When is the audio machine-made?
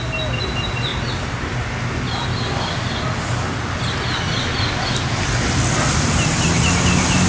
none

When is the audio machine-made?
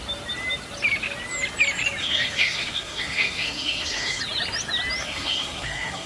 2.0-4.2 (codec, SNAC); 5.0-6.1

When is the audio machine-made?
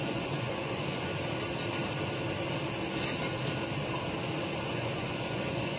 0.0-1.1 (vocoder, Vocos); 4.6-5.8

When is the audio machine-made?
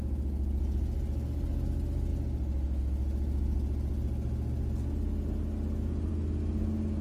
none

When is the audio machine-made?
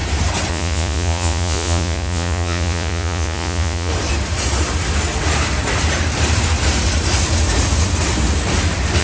0.5-3.9 (vocoder, Vocos)